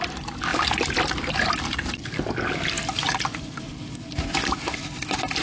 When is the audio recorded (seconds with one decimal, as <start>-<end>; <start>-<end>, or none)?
0.0-5.4